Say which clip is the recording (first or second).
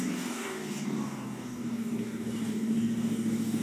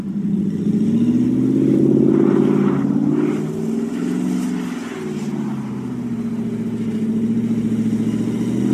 second